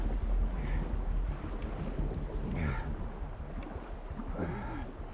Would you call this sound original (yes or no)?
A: yes